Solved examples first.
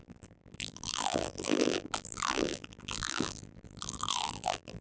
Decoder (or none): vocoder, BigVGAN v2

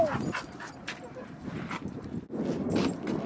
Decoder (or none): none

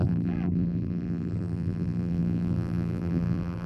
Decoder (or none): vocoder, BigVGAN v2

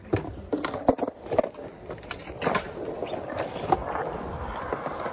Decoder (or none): none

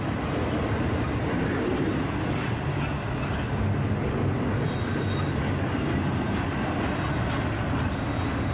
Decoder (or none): none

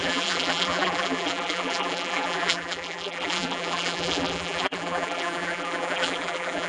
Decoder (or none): vocoder, BigVGAN v2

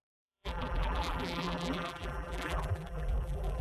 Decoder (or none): vocoder, BigVGAN v2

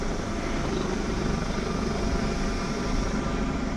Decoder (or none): vocoder, BigVGAN v2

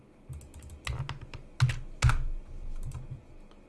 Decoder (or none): none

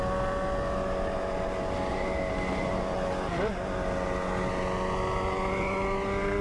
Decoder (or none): none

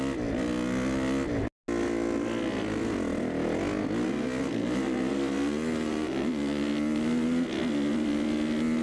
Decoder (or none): none